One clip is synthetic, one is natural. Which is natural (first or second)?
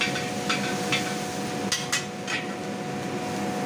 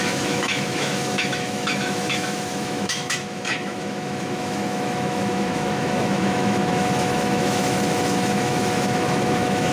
first